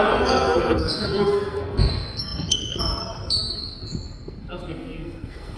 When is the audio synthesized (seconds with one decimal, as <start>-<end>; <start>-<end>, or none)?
0.0-5.6